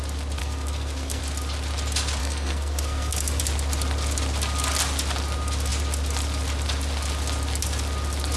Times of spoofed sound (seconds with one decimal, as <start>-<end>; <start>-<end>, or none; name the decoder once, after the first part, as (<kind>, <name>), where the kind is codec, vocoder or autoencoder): 0.4-1.2 (codec, SNAC); 2.2-3.4